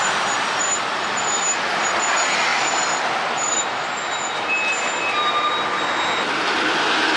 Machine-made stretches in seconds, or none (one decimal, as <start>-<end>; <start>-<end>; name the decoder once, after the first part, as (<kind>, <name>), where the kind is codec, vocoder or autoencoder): none